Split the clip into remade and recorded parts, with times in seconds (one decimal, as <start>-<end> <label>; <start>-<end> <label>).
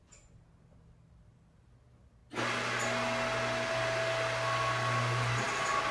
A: 0.0-5.9 recorded